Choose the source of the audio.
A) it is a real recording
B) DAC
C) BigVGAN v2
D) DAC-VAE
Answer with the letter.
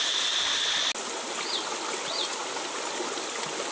A